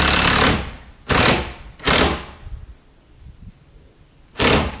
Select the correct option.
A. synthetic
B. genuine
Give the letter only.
B